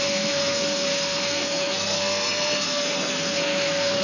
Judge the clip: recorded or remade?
remade